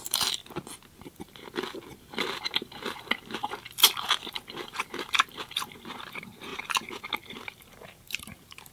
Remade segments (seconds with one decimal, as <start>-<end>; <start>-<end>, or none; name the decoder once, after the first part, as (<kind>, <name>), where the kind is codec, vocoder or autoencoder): 0.0-0.4 (vocoder, BigVGAN v2); 1.0-8.7